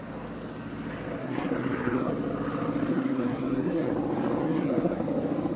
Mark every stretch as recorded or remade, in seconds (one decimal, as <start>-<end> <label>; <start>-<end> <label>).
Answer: 0.0-1.2 recorded; 1.2-2.1 remade; 2.1-2.9 recorded; 2.9-3.9 remade; 3.9-4.4 recorded; 4.4-5.0 remade; 5.0-5.6 recorded